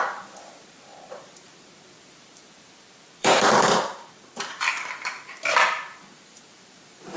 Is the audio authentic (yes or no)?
no